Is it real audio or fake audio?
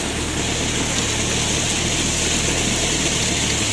real